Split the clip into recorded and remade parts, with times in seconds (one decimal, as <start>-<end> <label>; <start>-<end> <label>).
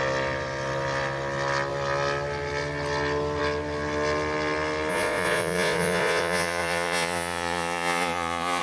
0.0-4.9 recorded; 4.9-8.6 remade